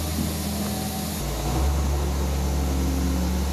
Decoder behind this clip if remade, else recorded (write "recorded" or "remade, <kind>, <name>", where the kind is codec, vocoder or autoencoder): recorded